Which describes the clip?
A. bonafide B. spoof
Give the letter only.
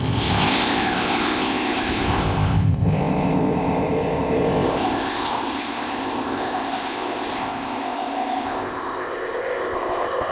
B